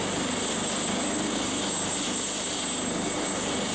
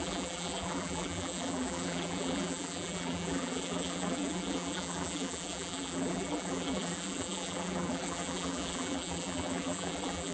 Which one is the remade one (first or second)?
second